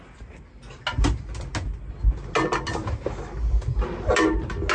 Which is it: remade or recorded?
recorded